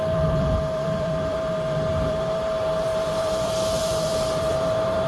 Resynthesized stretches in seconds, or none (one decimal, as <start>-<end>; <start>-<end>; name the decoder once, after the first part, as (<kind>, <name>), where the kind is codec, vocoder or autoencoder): 0.0-5.1 (vocoder, BigVGAN v2)